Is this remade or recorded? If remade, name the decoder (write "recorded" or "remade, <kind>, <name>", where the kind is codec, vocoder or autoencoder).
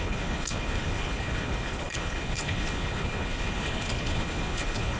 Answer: remade, codec, HILCodec